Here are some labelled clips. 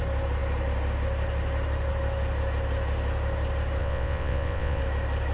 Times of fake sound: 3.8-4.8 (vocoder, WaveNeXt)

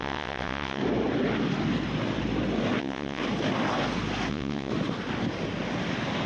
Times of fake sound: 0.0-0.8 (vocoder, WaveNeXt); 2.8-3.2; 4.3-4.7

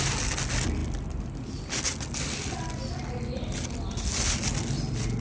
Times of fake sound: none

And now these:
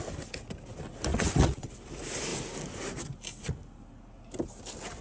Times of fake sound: 1.1-1.7 (vocoder, WaveNeXt)

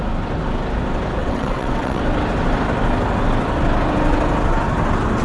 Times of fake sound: 1.2-2.0 (vocoder, WaveNeXt)

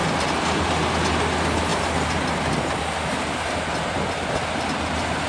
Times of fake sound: none

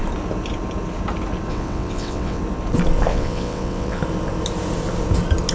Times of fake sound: 1.5-2.4 (vocoder, WaveNeXt); 3.1-4.0